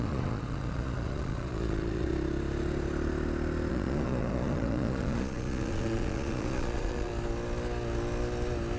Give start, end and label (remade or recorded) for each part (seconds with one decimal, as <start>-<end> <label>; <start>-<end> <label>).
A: 0.0-2.1 remade; 2.1-3.7 recorded; 3.7-7.1 remade; 7.1-8.8 recorded